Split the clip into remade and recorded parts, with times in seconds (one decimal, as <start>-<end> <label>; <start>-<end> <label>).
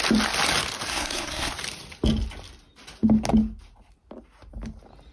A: 0.0-0.9 recorded; 0.9-1.5 remade; 1.5-5.1 recorded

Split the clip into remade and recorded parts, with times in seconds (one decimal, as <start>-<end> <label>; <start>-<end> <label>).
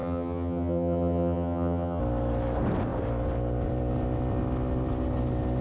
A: 0.0-2.0 remade; 2.0-5.6 recorded